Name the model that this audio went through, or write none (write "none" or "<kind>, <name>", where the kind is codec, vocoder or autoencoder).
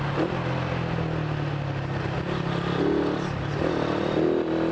none